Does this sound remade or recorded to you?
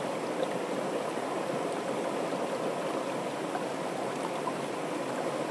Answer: recorded